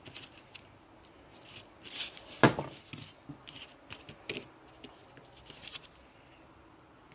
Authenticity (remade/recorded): recorded